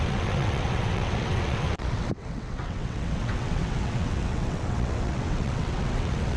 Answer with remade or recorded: remade